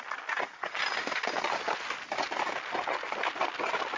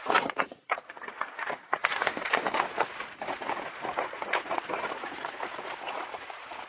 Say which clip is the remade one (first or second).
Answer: second